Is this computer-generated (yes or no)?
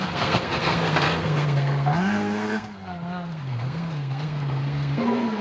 yes